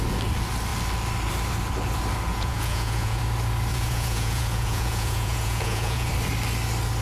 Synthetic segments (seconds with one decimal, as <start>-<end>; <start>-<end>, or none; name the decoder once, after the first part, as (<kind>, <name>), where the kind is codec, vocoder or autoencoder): 2.3-3.2 (vocoder, Vocos); 3.7-6.1